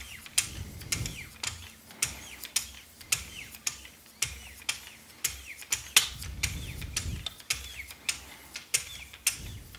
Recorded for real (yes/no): yes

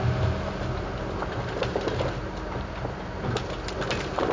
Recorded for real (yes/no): yes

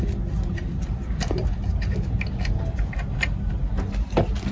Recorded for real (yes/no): yes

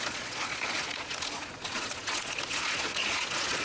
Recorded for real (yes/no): no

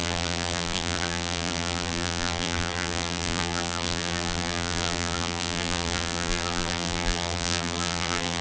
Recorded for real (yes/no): no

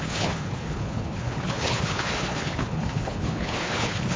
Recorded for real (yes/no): no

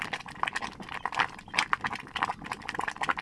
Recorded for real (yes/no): yes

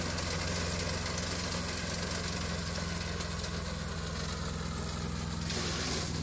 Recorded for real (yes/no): yes